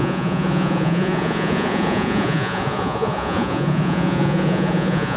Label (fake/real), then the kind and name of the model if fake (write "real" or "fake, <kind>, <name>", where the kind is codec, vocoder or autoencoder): fake, vocoder, Vocos